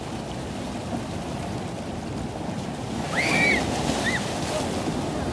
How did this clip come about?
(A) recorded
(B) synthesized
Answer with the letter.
A